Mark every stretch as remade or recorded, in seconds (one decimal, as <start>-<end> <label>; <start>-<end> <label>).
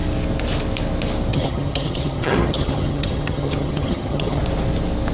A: 0.0-1.3 recorded; 1.3-4.4 remade; 4.4-5.1 recorded